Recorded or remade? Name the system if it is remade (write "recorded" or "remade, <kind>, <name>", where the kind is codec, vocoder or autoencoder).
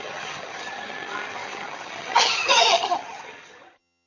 remade, vocoder, HiFi-GAN